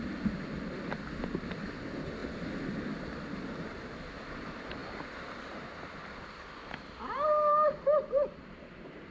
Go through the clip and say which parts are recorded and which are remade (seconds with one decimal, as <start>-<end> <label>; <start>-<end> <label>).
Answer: 0.0-9.1 recorded